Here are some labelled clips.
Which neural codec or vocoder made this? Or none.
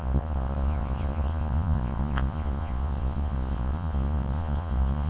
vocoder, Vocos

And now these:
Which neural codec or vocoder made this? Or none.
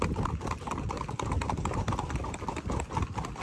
none